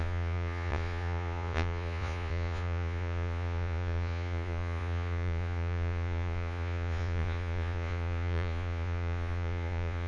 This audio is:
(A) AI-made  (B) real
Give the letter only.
A